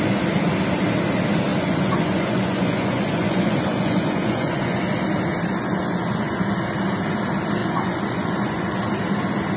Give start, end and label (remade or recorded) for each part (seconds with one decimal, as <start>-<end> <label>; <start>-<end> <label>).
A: 0.0-1.5 recorded; 1.5-4.8 remade; 4.8-5.5 recorded; 5.5-6.3 remade; 6.3-7.6 recorded; 7.6-8.7 remade; 8.7-9.6 recorded